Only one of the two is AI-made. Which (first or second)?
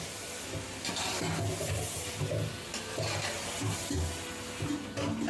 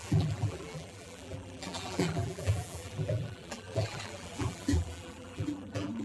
second